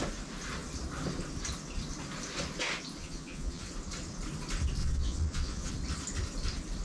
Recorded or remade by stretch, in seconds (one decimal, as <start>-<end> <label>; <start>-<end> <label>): 0.0-3.0 recorded; 3.0-3.7 remade; 3.7-4.8 recorded; 4.8-5.7 remade; 5.7-6.8 recorded